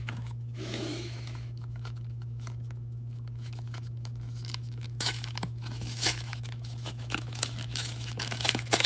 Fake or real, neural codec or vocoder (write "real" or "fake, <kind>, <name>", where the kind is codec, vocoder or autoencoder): fake, autoencoder, DAC-VAE